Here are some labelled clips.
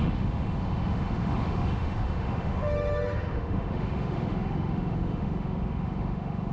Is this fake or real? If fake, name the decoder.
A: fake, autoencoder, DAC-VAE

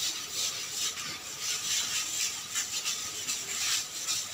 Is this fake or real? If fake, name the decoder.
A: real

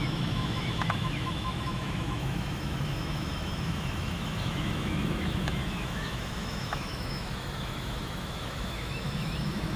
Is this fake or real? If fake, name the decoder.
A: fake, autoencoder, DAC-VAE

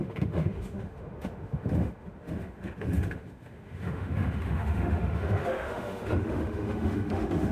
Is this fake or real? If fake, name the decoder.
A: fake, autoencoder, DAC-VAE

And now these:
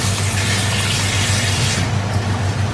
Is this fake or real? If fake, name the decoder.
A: real